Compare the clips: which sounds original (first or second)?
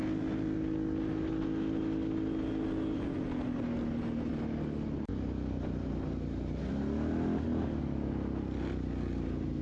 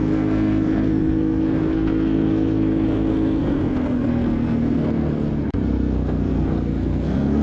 first